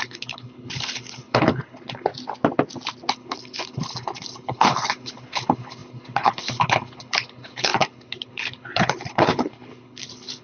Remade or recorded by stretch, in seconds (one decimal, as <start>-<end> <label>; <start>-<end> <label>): 0.0-2.1 remade; 2.1-3.1 recorded; 3.1-10.4 remade